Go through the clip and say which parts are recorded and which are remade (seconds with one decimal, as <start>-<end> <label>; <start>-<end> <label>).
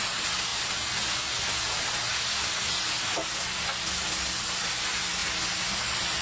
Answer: 0.0-6.2 recorded